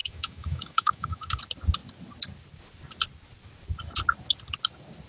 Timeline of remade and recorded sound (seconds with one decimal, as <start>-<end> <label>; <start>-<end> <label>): 0.0-1.4 remade; 1.4-5.1 recorded